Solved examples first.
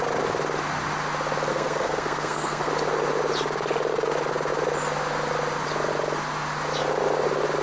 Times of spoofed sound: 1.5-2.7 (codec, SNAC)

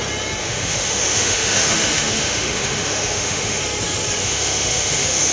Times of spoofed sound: 0.4-3.6 (autoencoder, DAC-VAE); 4.2-5.3

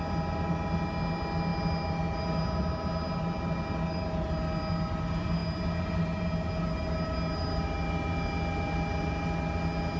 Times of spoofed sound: none

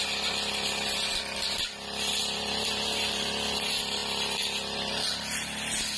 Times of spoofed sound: none

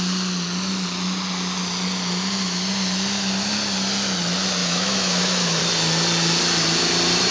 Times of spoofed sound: 4.6-5.6 (autoencoder, DAC-VAE)

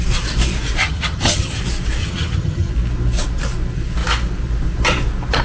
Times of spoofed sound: 0.8-1.6 (vocoder, HiFi-GAN); 2.0-2.7

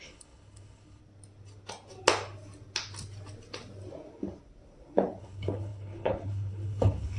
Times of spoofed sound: 0.0-1.0 (codec, HILCodec); 5.2-7.2